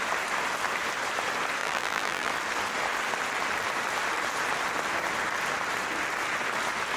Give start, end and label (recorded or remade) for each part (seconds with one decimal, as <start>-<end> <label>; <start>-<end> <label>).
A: 0.0-1.6 recorded; 1.6-2.3 remade; 2.3-7.0 recorded